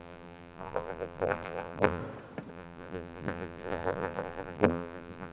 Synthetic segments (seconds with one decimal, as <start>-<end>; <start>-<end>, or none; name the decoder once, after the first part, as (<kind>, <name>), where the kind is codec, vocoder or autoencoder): 0.0-2.0 (vocoder, BigVGAN v2); 2.5-5.3